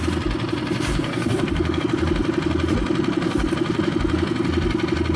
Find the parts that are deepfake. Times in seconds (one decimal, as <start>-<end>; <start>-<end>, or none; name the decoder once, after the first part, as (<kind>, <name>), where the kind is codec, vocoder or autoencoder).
0.9-1.8 (codec, SNAC)